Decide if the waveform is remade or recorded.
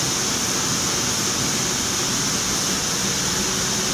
recorded